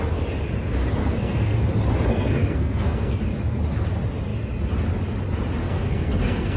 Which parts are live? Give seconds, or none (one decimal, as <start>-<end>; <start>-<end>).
0.0-1.0; 1.6-2.1; 3.2-5.6